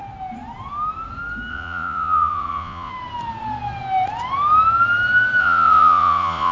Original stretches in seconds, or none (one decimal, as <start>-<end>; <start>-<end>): 0.0-1.5; 2.9-5.4